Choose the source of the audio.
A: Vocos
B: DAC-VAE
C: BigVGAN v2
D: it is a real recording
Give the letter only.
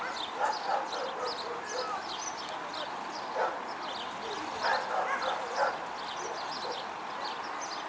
D